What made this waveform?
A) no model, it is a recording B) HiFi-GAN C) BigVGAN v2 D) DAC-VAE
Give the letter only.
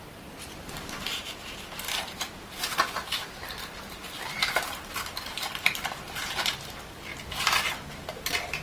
C